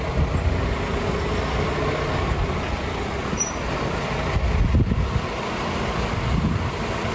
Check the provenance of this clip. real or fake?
real